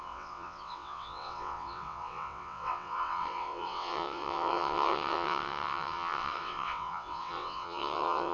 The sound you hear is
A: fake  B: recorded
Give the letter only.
A